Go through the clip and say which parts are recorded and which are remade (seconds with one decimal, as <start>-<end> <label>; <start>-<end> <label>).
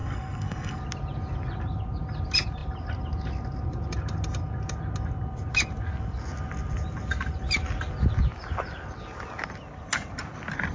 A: 0.0-0.8 remade; 0.8-10.7 recorded